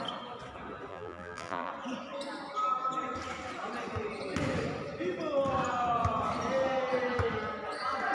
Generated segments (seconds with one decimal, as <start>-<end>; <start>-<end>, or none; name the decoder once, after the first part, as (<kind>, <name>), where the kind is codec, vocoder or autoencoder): 0.9-1.7 (vocoder, BigVGAN v2)